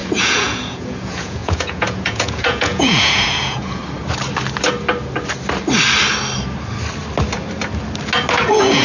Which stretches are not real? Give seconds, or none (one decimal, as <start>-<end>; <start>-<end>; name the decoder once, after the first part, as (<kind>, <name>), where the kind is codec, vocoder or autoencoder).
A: 0.0-3.8 (vocoder, Vocos); 8.4-8.8